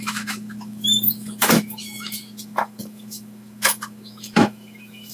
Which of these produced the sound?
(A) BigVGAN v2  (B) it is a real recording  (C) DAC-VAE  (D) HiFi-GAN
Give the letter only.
C